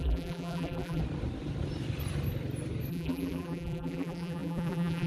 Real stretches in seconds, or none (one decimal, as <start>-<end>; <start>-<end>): 1.0-2.9